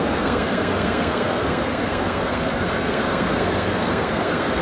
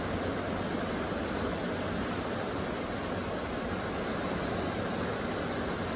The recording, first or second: second